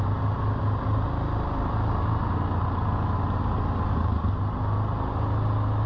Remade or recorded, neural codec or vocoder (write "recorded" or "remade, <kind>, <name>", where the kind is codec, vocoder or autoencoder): recorded